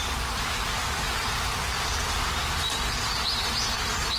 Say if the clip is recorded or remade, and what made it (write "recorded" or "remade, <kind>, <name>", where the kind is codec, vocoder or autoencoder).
recorded